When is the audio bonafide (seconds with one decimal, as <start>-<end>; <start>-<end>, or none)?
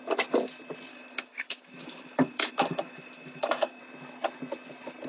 0.0-0.9; 3.8-5.1